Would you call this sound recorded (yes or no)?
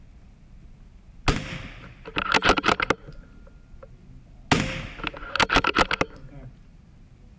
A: yes